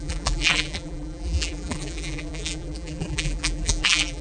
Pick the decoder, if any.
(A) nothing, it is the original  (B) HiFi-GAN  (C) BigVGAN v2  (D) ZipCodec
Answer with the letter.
C